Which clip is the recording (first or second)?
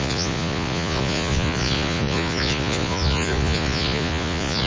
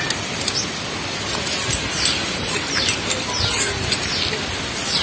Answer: second